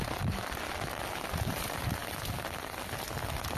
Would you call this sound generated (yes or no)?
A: no